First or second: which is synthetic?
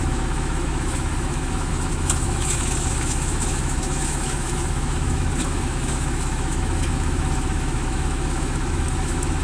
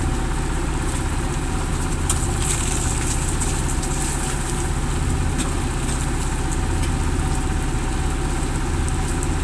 first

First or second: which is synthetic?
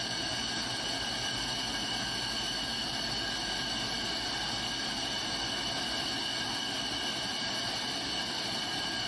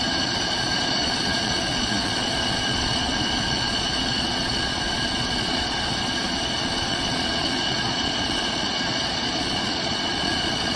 second